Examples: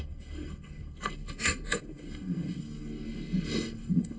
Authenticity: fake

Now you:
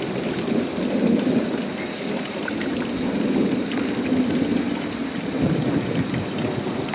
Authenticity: real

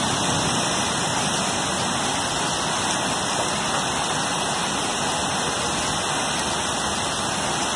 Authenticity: real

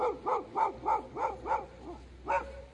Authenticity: real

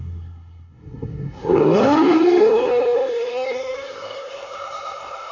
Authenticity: fake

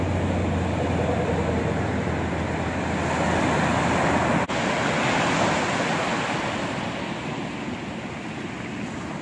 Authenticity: real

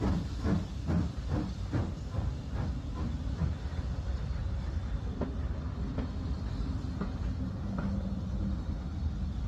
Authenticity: real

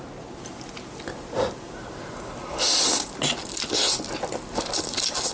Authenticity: real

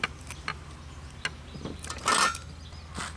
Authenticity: real